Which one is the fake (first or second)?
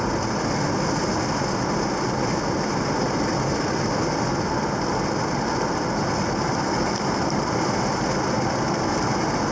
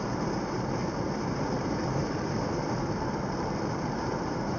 second